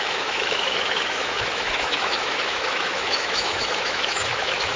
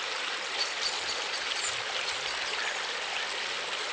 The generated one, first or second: first